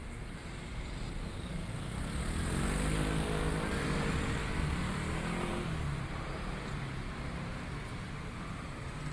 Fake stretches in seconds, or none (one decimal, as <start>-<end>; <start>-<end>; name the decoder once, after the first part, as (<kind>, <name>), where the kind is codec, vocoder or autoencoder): 0.0-2.2 (vocoder, BigVGAN v2)